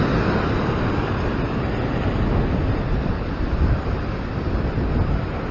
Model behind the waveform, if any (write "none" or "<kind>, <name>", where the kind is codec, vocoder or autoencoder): none